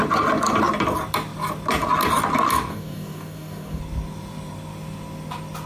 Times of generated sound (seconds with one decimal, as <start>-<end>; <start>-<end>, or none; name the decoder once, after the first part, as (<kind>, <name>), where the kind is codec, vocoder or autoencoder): 2.7-3.8 (codec, DAC)